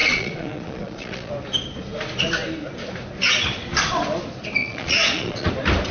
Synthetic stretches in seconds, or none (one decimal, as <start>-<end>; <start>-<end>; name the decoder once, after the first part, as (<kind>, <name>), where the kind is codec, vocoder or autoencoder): 0.0-1.3 (vocoder, Vocos); 4.6-5.5